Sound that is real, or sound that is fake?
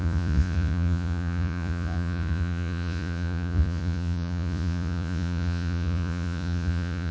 fake